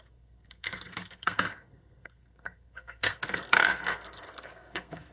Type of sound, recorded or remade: remade